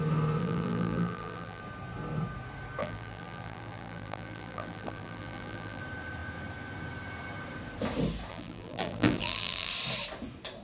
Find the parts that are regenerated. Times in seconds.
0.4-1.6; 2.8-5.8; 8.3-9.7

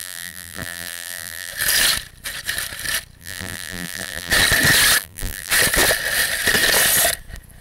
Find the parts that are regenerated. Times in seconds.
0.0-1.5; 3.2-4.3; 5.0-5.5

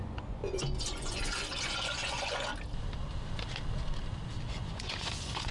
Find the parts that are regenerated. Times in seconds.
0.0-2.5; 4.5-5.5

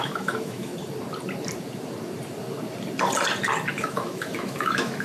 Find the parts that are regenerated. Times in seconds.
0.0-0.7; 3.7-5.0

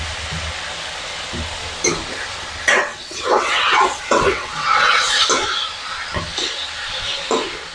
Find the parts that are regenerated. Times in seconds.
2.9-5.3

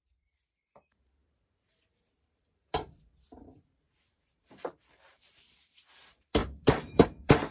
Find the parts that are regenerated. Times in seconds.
0.0-7.5

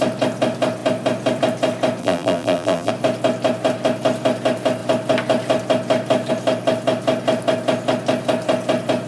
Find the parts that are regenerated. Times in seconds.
2.0-2.9